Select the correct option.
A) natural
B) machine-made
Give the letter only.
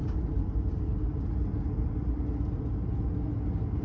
A